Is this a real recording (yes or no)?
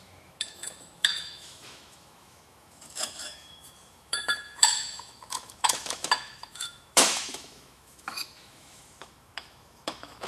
no